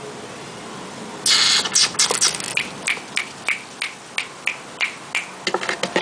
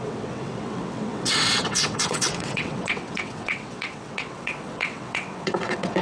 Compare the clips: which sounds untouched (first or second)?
first